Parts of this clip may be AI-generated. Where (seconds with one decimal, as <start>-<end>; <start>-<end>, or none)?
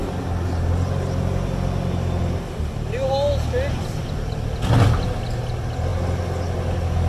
none